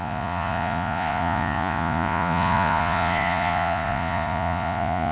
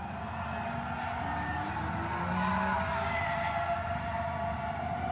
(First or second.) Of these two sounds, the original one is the second